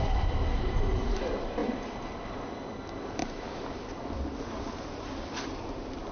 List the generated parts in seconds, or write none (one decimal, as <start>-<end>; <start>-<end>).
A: none